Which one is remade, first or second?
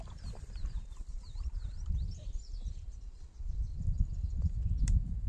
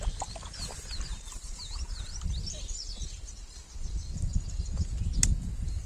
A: first